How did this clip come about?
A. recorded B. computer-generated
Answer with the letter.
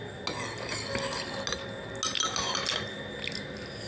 A